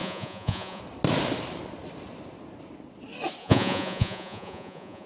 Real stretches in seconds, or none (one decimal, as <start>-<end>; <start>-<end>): 0.8-3.4